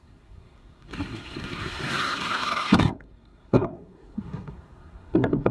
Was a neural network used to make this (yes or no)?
yes